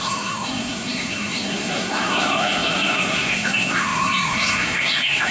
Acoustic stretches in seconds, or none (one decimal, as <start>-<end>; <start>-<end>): none